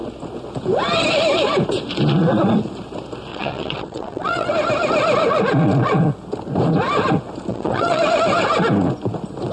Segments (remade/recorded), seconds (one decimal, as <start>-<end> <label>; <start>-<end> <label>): 0.0-3.3 recorded; 3.3-4.5 remade; 4.5-7.5 recorded; 7.5-8.2 remade; 8.2-9.5 recorded